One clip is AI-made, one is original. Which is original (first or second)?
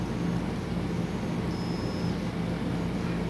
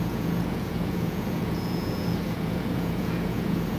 first